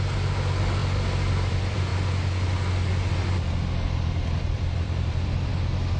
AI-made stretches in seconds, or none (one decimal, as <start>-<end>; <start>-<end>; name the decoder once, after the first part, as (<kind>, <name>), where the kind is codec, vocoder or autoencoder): 0.0-0.8 (vocoder, BigVGAN v2); 1.5-1.9; 3.1-5.5